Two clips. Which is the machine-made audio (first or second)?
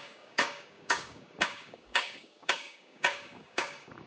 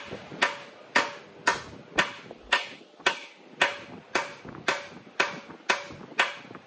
first